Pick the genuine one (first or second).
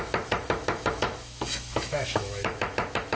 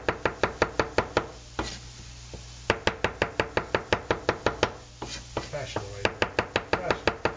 second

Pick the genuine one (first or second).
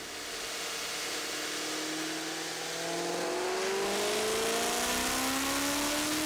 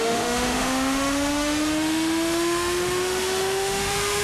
first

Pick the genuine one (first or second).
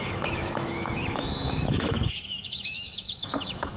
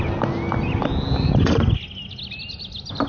second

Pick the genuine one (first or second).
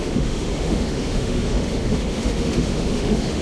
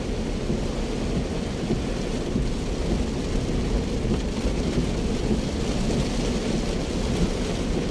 second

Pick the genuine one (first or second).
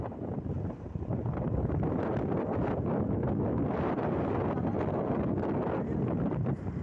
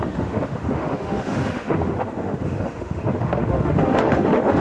first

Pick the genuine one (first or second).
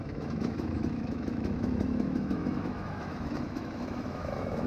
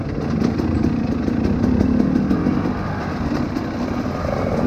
second